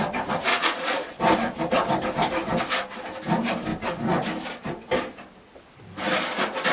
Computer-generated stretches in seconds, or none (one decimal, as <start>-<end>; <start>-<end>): 0.5-1.2